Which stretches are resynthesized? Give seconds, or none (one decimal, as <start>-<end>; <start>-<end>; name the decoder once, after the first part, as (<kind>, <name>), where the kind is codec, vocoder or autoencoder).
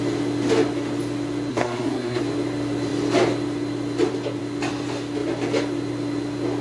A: 1.5-2.2 (codec, SNAC)